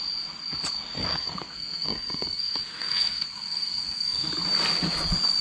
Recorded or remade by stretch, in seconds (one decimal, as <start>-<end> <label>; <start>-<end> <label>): 0.0-1.1 recorded; 1.1-4.3 remade; 4.3-5.4 recorded